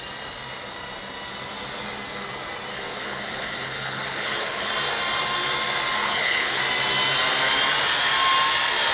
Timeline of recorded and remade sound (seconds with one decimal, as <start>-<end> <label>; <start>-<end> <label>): 0.0-2.7 recorded; 2.7-4.7 remade; 4.7-6.0 recorded; 6.0-6.6 remade; 6.6-8.9 recorded